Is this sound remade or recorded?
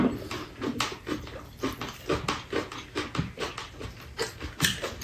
recorded